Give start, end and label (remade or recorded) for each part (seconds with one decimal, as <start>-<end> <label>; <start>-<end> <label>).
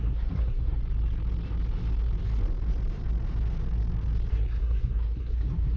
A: 0.0-0.8 remade; 0.8-4.3 recorded; 4.3-5.8 remade